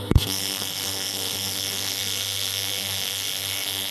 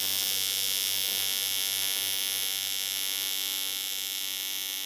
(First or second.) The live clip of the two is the second